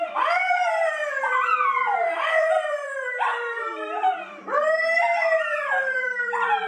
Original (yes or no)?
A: no